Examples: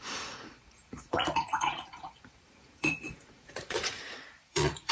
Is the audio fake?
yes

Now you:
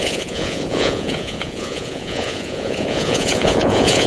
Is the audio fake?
yes